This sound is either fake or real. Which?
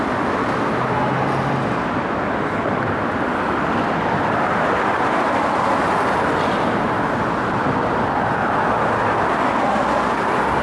real